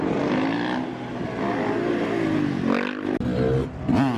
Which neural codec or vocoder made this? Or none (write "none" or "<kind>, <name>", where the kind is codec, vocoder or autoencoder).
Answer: none